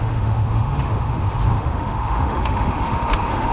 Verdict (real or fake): fake